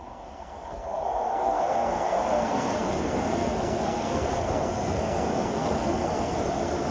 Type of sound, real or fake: fake